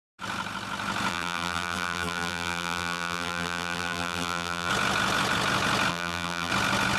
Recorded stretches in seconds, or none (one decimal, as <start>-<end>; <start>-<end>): 0.0-1.1; 4.7-5.9; 6.5-7.0